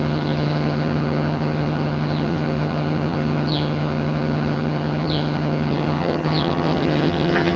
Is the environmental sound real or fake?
fake